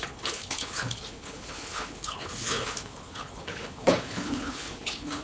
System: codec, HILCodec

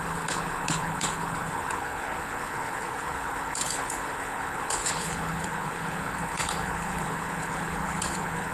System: codec, HILCodec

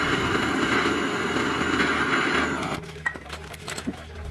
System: none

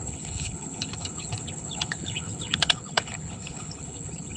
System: codec, HILCodec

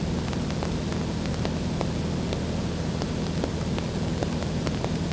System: none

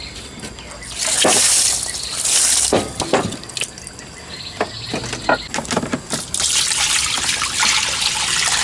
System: none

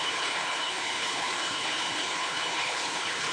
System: codec, HILCodec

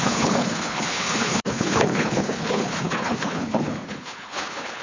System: codec, HILCodec